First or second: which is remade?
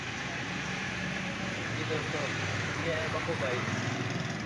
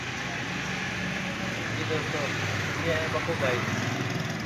first